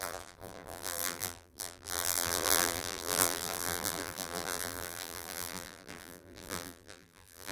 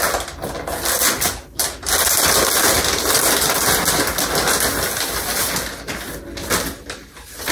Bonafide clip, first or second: second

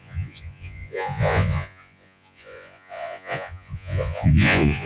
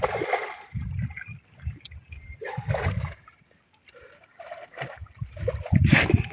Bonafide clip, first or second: second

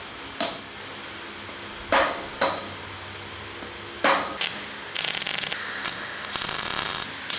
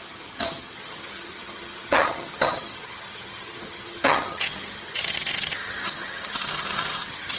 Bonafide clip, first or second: first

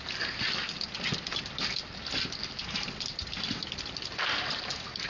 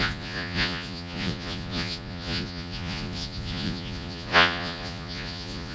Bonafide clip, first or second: first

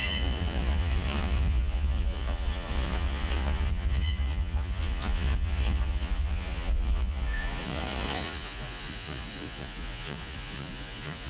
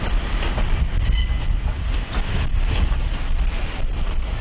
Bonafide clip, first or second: second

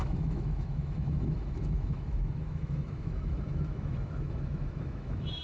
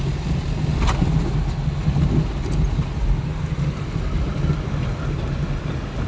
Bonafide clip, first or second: second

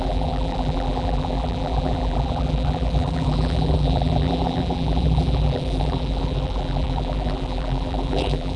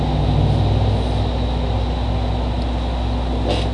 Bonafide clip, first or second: second